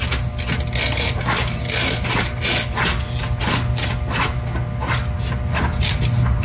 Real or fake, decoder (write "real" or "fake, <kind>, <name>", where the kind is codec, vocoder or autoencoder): real